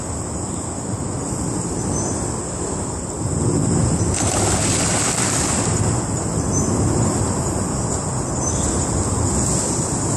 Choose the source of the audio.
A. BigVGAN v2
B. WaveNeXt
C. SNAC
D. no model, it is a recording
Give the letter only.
D